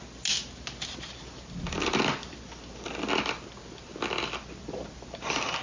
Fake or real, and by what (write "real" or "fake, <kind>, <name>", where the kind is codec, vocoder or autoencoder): real